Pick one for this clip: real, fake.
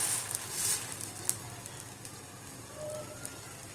real